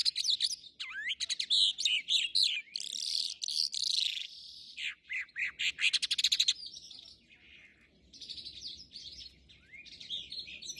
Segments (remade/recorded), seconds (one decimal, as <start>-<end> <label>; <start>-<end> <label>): 0.0-10.8 recorded